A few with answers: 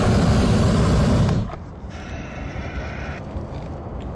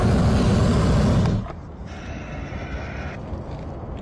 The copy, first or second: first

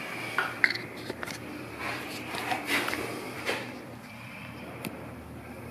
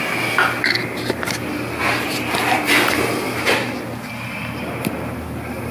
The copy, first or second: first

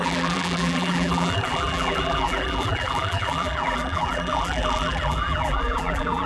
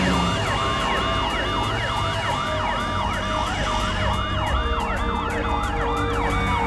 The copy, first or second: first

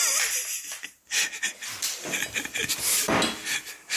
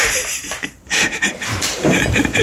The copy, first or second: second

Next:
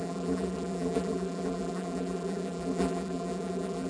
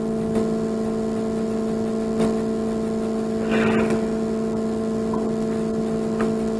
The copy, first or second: first